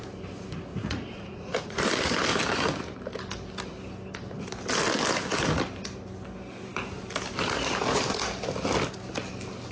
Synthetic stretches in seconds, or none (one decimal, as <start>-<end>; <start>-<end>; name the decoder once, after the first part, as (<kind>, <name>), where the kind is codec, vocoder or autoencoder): 0.7-1.8 (vocoder, Vocos)